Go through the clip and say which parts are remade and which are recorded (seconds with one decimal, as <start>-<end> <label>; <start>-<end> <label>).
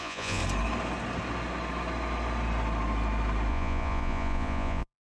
0.0-0.4 remade; 0.4-3.5 recorded; 3.5-5.1 remade